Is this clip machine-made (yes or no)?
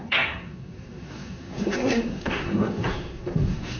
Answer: yes